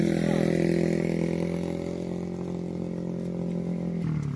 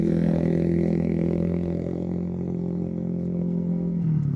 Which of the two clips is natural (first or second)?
first